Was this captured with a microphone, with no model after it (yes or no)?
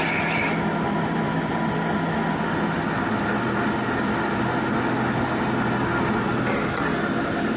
yes